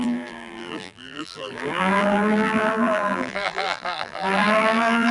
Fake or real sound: fake